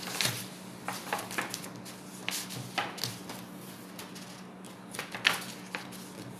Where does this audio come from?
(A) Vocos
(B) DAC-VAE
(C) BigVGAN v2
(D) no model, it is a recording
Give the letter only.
D